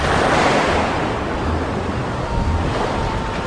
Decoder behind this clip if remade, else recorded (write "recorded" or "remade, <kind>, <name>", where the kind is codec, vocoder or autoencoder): recorded